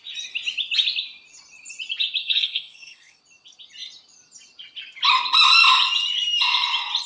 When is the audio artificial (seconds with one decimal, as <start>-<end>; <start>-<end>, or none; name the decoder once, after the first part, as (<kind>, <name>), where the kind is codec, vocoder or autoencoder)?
2.2-3.2 (codec, SNAC)